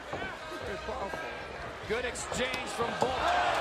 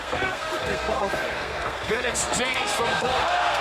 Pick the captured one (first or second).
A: first